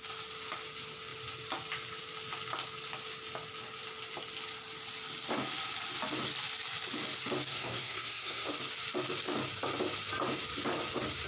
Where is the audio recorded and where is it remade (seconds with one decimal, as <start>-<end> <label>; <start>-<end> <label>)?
0.0-7.5 recorded; 7.5-8.5 remade; 8.5-11.3 recorded